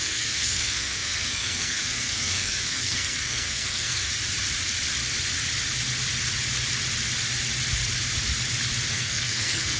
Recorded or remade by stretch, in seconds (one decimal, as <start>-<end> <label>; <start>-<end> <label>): 0.0-4.1 remade; 4.1-8.9 recorded; 8.9-9.8 remade